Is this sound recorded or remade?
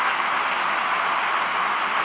recorded